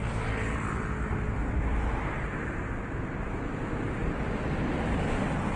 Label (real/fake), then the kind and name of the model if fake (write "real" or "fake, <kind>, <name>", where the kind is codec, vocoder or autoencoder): real